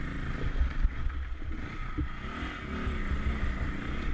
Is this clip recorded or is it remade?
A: recorded